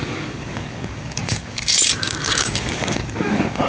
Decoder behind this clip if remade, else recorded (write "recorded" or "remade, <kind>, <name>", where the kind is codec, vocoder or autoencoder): remade, codec, DAC